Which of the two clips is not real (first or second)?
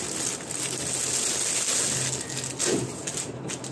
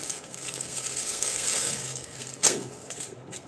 second